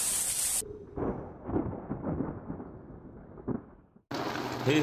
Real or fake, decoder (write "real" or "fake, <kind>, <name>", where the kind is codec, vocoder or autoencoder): real